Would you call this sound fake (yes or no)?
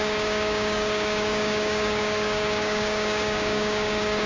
yes